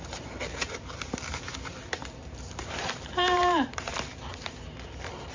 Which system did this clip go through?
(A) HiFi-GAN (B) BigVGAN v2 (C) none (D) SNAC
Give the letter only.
B